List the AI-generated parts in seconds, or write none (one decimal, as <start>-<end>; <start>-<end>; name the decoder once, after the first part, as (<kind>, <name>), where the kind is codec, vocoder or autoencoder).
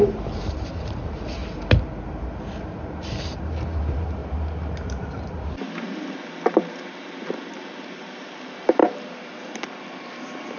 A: 0.0-1.4 (vocoder, BigVGAN v2); 2.9-4.2; 5.8-10.6